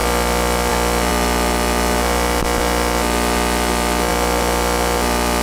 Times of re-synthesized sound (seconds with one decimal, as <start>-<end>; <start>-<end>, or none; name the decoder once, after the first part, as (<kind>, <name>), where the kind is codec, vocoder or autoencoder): none